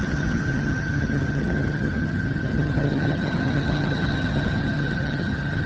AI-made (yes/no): yes